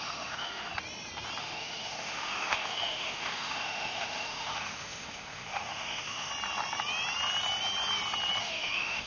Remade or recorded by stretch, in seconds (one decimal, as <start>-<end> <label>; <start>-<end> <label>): 0.0-0.7 remade; 0.7-1.4 recorded; 1.4-6.3 remade; 6.3-8.4 recorded; 8.4-9.1 remade